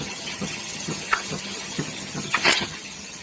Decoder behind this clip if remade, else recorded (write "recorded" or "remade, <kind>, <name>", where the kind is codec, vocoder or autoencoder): remade, vocoder, HiFi-GAN